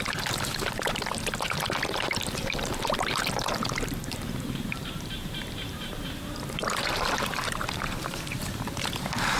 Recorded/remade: remade